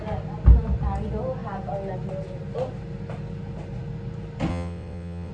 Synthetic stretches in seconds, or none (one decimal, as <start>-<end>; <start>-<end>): 4.5-5.3